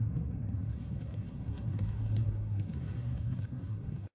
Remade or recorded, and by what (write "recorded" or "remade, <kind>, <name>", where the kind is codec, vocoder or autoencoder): remade, codec, SNAC